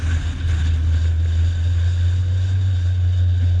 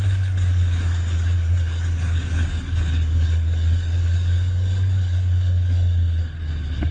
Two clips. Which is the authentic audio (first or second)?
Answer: first